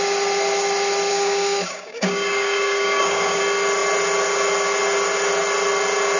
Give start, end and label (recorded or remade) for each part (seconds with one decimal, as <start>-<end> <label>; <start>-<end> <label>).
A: 0.0-1.1 recorded; 1.1-3.4 remade; 3.4-6.2 recorded